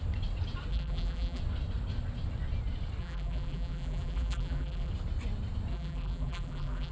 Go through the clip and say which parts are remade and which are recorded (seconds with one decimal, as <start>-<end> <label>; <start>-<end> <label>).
0.0-0.7 recorded; 0.7-1.4 remade; 1.4-3.0 recorded; 3.0-4.9 remade; 4.9-5.7 recorded; 5.7-6.9 remade